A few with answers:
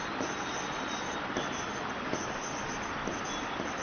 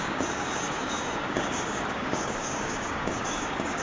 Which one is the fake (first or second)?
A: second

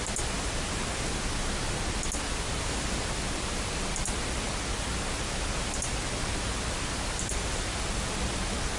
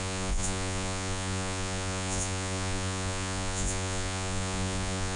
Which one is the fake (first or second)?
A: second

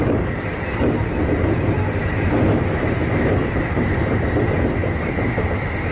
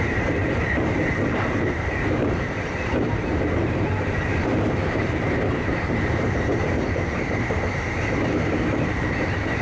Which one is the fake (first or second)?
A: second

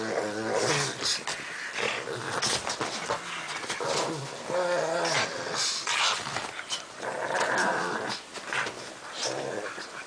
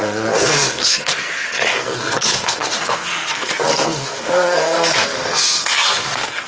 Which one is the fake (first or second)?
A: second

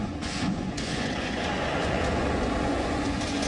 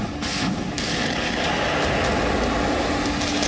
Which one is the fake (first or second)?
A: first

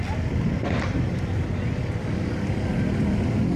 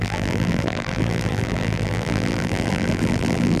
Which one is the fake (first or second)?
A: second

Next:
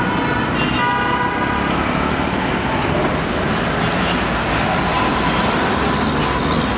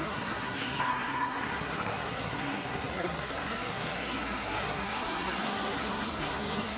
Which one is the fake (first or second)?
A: second